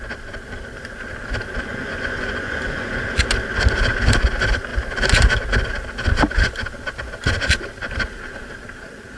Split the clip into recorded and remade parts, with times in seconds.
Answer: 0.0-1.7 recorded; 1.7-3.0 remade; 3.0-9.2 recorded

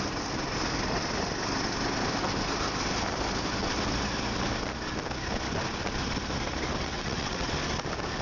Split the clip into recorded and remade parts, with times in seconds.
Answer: 0.0-6.8 recorded; 6.8-7.5 remade; 7.5-8.2 recorded

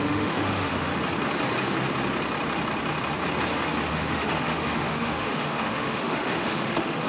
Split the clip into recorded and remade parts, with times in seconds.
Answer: 0.0-0.9 remade; 0.9-3.9 recorded; 3.9-7.1 remade

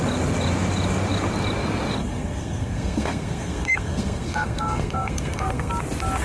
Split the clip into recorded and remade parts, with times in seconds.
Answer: 0.0-2.0 recorded; 2.0-5.7 remade; 5.7-6.2 recorded

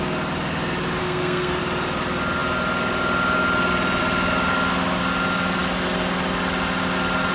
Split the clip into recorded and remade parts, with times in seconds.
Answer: 0.0-1.0 recorded; 1.0-1.6 remade; 1.6-7.3 recorded

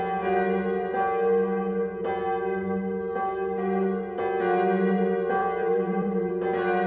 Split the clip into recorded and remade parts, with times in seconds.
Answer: 0.0-5.4 recorded; 5.4-6.3 remade; 6.3-6.9 recorded

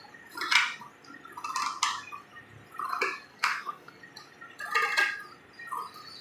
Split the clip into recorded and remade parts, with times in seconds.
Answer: 0.0-3.3 recorded; 3.3-4.0 remade; 4.0-6.2 recorded